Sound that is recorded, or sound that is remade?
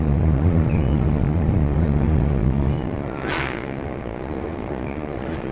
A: remade